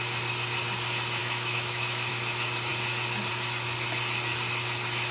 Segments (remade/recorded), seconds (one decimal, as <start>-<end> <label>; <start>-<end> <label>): 0.0-1.2 recorded; 1.2-2.1 remade; 2.1-5.1 recorded